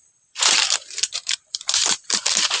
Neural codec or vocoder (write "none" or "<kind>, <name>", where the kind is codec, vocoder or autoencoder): vocoder, BigVGAN v2